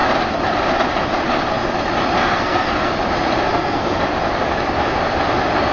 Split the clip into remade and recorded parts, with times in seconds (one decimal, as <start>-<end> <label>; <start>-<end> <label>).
0.0-2.2 recorded; 2.2-2.9 remade; 2.9-3.5 recorded; 3.5-4.0 remade; 4.0-5.7 recorded

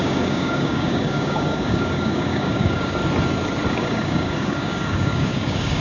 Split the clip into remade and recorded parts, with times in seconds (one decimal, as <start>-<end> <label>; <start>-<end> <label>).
0.0-3.0 remade; 3.0-3.7 recorded; 3.7-5.8 remade

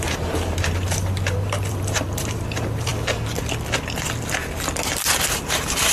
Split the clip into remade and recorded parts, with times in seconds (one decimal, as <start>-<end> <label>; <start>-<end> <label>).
0.0-2.9 remade; 2.9-5.4 recorded; 5.4-5.9 remade

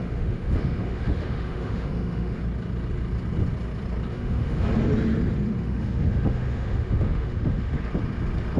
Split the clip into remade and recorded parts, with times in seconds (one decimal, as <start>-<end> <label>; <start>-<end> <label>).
0.0-2.4 remade; 2.4-4.1 recorded; 4.1-4.7 remade; 4.7-5.6 recorded; 5.6-7.8 remade; 7.8-8.6 recorded

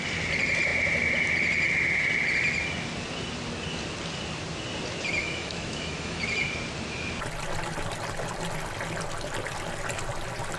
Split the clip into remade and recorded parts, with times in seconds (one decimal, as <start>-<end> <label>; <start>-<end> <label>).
0.0-5.2 recorded; 5.2-6.2 remade; 6.2-10.6 recorded

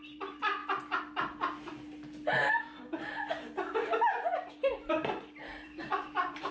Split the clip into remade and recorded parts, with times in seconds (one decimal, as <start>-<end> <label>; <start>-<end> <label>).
0.0-0.6 remade; 0.6-4.5 recorded; 4.5-6.5 remade

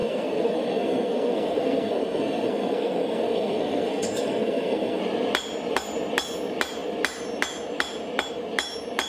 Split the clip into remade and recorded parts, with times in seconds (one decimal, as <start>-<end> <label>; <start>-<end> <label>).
0.0-5.0 remade; 5.0-9.1 recorded